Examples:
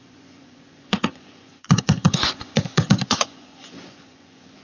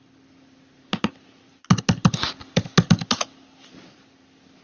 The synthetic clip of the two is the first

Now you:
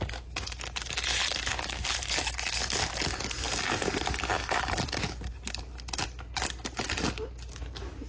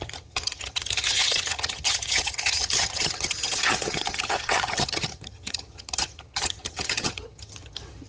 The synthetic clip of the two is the second